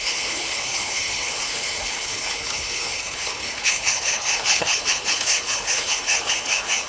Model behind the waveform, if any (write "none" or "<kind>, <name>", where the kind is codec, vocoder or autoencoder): codec, HILCodec